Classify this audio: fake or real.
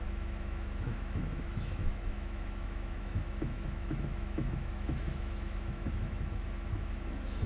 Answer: fake